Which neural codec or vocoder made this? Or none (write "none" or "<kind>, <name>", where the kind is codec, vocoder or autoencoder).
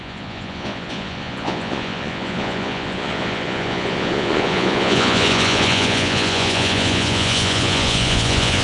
vocoder, Vocos